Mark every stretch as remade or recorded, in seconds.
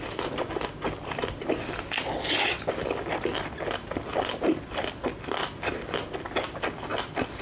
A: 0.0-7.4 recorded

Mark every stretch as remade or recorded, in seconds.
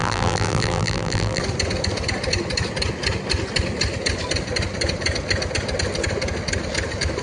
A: 0.0-1.4 remade; 1.4-7.2 recorded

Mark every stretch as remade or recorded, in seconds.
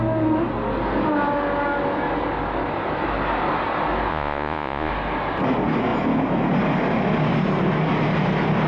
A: 0.0-4.1 recorded; 4.1-4.9 remade; 4.9-8.7 recorded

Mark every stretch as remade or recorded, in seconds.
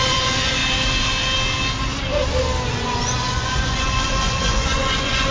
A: 0.0-0.6 remade; 0.6-2.7 recorded; 2.7-5.3 remade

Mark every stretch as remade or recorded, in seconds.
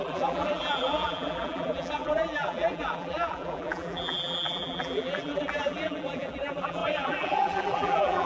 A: 0.0-8.3 remade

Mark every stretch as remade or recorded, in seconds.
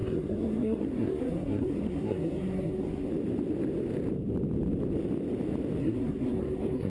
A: 0.0-3.1 remade; 3.1-5.8 recorded; 5.8-6.9 remade